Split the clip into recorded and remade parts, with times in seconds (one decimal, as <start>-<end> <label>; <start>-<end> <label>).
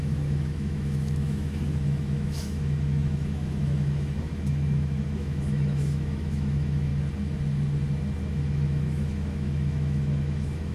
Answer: 0.0-6.9 remade; 6.9-8.3 recorded; 8.3-10.7 remade